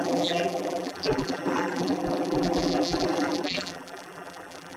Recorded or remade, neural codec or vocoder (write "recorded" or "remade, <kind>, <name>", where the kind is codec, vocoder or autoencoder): remade, vocoder, BigVGAN v2